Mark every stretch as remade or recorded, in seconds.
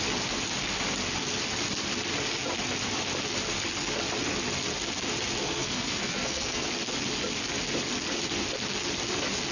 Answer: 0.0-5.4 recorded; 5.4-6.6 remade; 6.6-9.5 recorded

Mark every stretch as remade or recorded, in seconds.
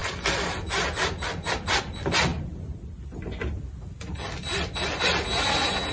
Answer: 0.0-5.9 recorded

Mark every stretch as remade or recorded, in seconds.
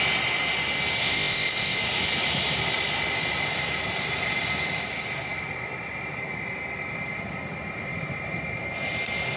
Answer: 0.0-1.0 recorded; 1.0-1.8 remade; 1.8-9.4 recorded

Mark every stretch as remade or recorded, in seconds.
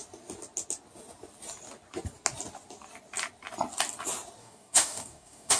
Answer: 0.0-4.4 recorded; 4.4-5.6 remade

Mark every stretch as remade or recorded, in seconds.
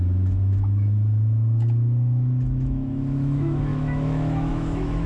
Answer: 0.0-5.1 remade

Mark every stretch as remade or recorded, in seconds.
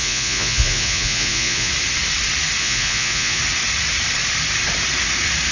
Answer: 0.0-1.7 remade; 1.7-2.6 recorded; 2.6-3.4 remade; 3.4-5.5 recorded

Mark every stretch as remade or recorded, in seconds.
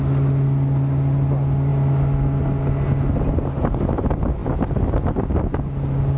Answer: 0.0-6.2 recorded